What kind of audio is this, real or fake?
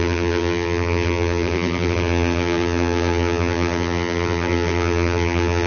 fake